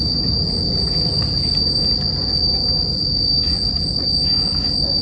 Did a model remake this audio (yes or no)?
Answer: no